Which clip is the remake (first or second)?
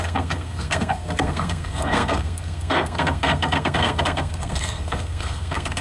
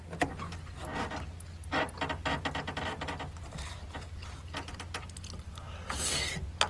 first